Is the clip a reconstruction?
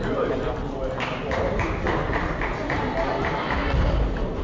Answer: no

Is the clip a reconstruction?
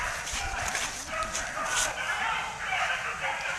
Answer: no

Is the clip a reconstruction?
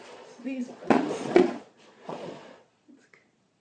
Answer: yes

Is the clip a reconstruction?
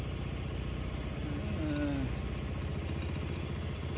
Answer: no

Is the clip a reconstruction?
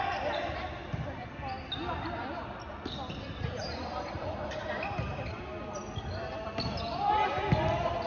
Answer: no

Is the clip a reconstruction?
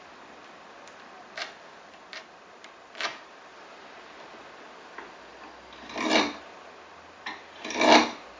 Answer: no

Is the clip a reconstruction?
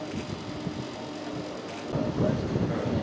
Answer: no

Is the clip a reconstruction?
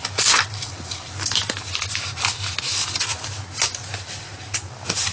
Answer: no